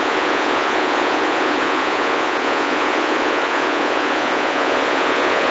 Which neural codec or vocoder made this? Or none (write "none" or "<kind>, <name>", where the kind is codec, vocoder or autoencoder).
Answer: vocoder, Vocos